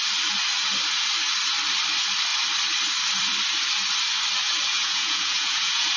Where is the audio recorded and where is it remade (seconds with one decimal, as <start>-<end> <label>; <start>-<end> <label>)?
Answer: 0.0-4.7 recorded; 4.7-6.0 remade